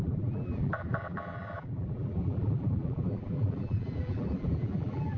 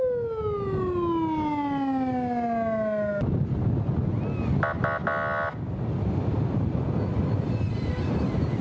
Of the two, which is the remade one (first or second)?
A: first